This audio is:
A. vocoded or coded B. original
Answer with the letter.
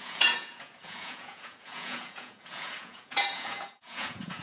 A